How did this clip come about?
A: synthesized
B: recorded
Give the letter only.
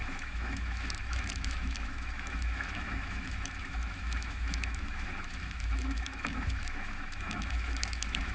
A